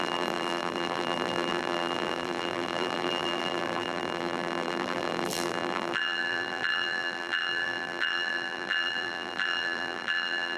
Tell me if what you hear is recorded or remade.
remade